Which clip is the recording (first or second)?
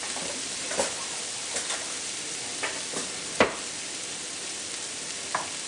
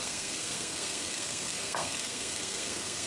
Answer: first